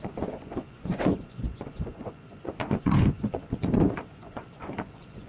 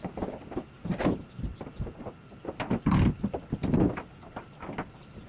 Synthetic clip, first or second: first